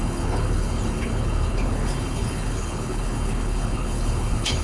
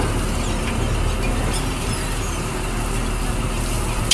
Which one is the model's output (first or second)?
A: first